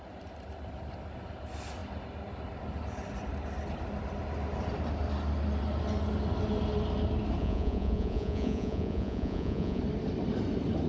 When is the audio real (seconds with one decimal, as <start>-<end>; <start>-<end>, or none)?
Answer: 0.0-7.4; 9.8-10.9